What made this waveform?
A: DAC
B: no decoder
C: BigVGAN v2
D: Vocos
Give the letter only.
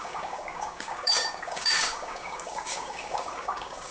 A